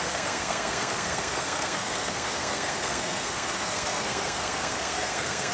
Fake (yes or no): yes